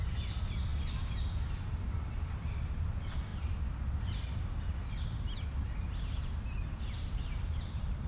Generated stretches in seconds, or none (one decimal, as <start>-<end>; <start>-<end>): none